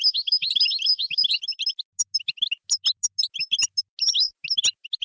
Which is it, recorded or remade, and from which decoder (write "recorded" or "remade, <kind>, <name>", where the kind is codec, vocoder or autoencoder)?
recorded